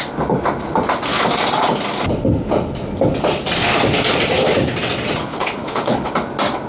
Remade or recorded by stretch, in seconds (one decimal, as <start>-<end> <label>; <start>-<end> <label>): 0.0-5.3 recorded; 5.3-6.1 remade; 6.1-6.7 recorded